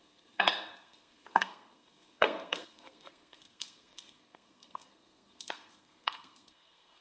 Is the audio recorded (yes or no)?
no